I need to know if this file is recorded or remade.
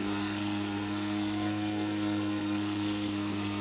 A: remade